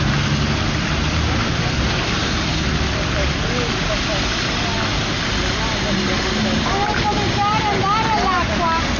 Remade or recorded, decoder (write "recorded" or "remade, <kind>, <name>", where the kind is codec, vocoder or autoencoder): recorded